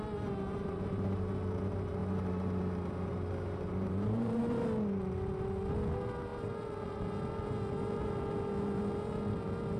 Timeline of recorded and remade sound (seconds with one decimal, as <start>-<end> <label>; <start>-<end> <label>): 0.0-0.5 recorded; 0.5-1.3 remade; 1.3-2.0 recorded; 2.0-4.4 remade; 4.4-9.8 recorded